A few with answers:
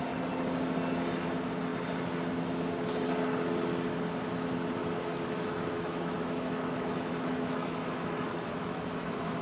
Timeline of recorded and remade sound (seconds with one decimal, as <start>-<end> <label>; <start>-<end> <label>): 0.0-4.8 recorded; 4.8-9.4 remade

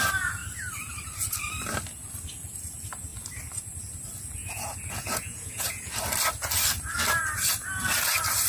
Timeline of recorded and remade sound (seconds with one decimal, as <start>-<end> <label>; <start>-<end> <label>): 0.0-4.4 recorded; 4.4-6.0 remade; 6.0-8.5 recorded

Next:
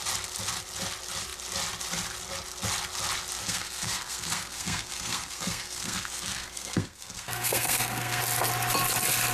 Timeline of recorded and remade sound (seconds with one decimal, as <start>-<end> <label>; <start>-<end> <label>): 0.0-3.4 recorded; 3.4-8.2 remade; 8.2-9.3 recorded

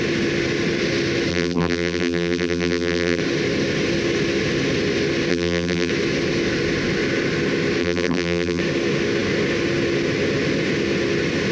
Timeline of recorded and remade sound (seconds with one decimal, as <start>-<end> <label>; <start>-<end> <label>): 0.0-1.3 recorded; 1.3-3.2 remade; 3.2-5.3 recorded; 5.3-5.9 remade; 5.9-7.8 recorded; 7.8-8.6 remade; 8.6-11.5 recorded

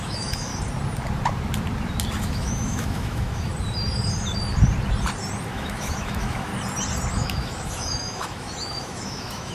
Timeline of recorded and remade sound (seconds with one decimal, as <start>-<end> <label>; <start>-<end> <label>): 0.0-0.5 remade; 0.5-2.2 recorded; 2.2-3.5 remade; 3.5-5.5 recorded; 5.5-6.5 remade; 6.5-7.1 recorded; 7.1-9.5 remade

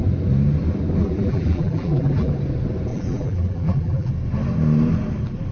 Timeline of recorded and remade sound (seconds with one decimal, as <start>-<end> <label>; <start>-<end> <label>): 0.0-1.0 recorded; 1.0-2.3 remade; 2.3-2.9 recorded; 2.9-4.1 remade; 4.1-5.5 recorded